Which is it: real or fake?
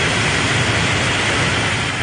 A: real